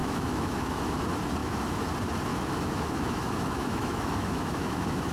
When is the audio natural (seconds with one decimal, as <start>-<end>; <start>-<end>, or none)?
0.9-1.4; 1.9-2.3